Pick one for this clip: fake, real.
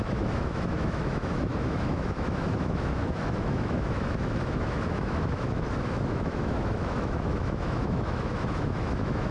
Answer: fake